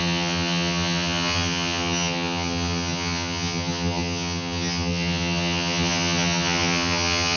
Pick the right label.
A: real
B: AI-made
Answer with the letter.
B